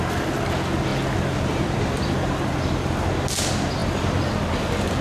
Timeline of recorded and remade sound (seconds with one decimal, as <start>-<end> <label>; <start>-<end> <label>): 0.0-0.9 recorded; 0.9-2.1 remade; 2.1-5.0 recorded